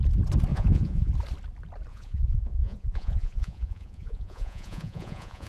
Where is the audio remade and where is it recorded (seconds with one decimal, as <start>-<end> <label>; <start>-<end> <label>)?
0.0-0.5 recorded; 0.5-1.1 remade; 1.1-1.9 recorded; 1.9-5.5 remade